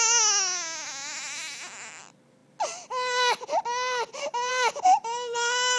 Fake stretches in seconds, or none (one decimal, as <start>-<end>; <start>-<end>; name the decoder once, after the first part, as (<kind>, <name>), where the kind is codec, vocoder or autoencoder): none